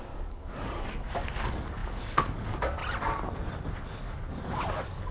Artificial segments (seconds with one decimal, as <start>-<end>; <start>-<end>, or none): 0.0-2.8; 4.0-5.1